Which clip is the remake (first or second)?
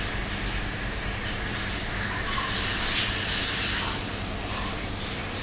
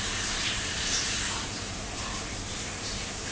second